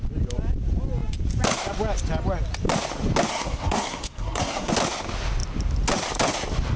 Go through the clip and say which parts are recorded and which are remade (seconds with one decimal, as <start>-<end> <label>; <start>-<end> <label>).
0.0-3.3 recorded; 3.3-4.7 remade; 4.7-6.8 recorded